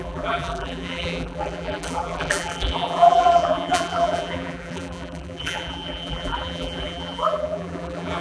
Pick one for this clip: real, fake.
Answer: fake